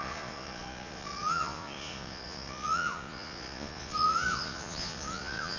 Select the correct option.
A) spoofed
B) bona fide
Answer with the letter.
A